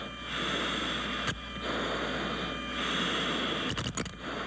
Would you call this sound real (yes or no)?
yes